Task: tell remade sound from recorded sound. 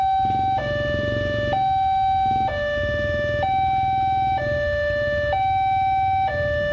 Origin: recorded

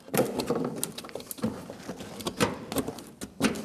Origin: recorded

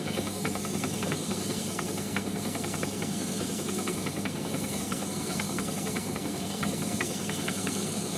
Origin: remade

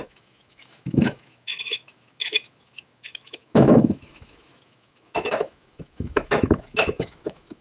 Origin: remade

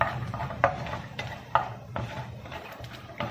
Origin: remade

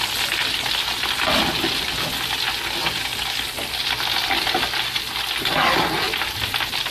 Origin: recorded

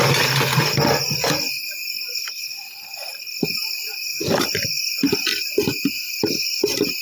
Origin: recorded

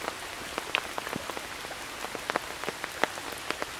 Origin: recorded